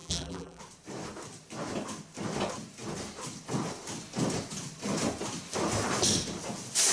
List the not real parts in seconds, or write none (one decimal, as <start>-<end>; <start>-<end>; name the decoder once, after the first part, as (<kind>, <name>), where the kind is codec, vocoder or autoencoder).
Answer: 0.0-0.6 (vocoder, BigVGAN v2)